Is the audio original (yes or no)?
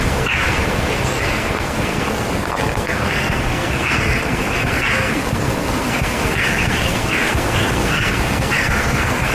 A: no